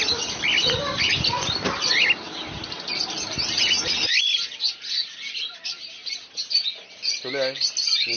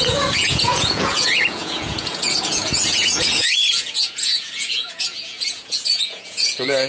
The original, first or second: first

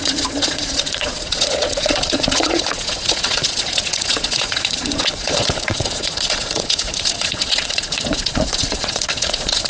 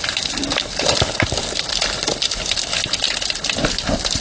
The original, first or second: second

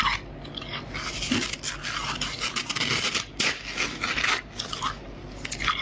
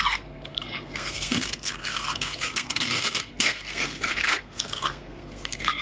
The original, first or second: first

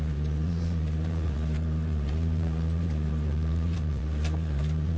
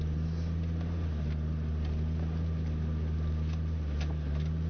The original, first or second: second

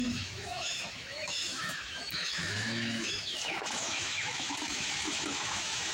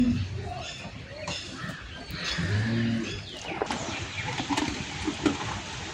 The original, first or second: second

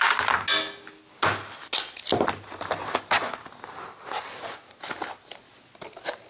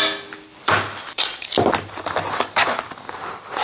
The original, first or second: first